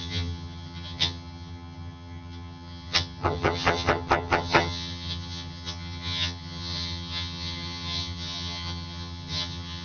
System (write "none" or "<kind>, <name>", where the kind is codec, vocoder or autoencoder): vocoder, HiFi-GAN